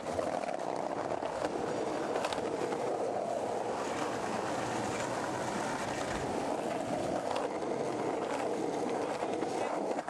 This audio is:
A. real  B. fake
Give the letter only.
A